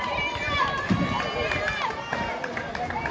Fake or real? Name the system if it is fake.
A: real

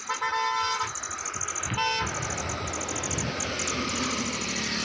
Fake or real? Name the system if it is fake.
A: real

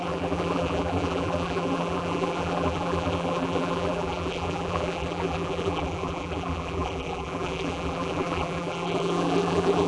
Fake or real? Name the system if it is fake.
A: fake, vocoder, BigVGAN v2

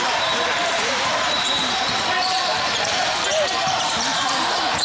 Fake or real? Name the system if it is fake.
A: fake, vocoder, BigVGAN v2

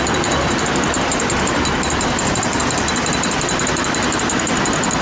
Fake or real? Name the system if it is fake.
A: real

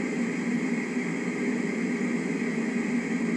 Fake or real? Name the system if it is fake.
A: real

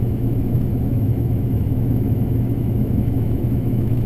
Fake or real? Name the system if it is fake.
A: fake, autoencoder, DAC-VAE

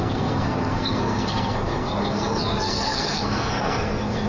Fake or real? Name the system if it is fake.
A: fake, codec, SNAC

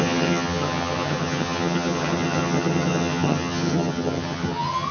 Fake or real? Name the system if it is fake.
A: fake, vocoder, HiFi-GAN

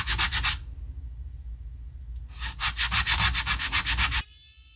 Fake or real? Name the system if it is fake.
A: real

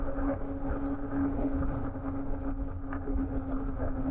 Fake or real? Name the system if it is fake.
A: real